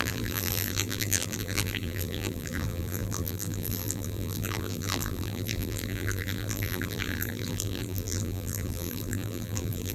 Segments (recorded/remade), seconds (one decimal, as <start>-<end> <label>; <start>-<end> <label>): 0.0-9.9 remade